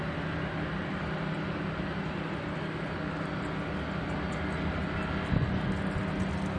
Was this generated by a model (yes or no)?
no